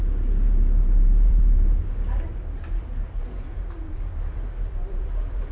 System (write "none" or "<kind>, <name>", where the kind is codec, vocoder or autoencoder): vocoder, BigVGAN v2